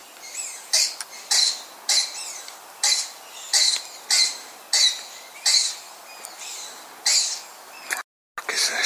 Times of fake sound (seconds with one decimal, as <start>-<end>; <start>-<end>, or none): none